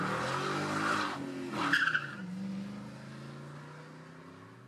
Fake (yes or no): no